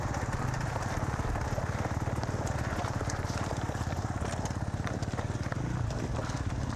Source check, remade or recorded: recorded